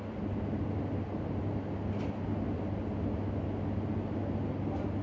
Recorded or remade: recorded